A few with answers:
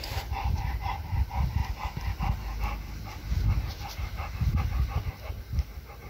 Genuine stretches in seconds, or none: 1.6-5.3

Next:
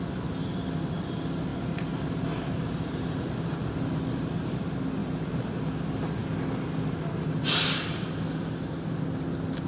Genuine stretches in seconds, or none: 0.0-1.5; 3.2-5.0; 5.6-9.7

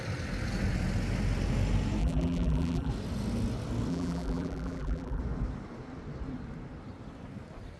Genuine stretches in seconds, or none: 0.0-2.0; 2.9-3.9; 5.2-7.8

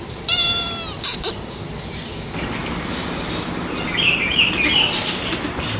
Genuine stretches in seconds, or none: 0.0-5.8

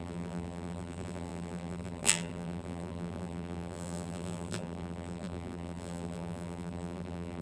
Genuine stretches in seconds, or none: none

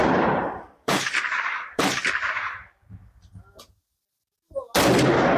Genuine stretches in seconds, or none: 3.0-5.4

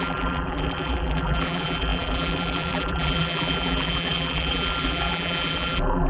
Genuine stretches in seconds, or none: none

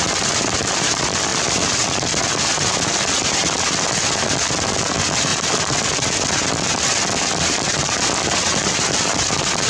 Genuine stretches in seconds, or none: 0.0-5.3; 6.2-9.7